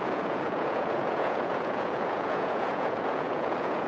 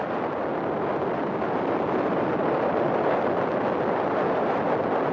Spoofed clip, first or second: first